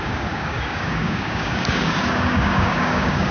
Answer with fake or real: fake